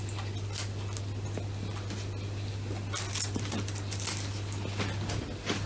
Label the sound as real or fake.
real